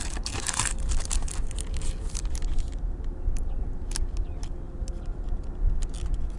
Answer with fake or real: real